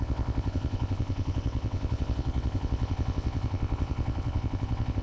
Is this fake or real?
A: fake